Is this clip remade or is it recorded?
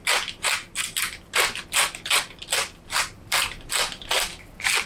recorded